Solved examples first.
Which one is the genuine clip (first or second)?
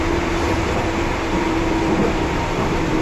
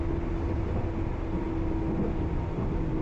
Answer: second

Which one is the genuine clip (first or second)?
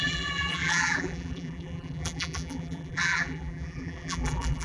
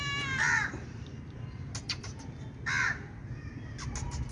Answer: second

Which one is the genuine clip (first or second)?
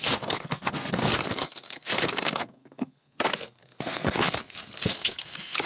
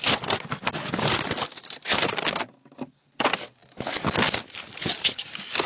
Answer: second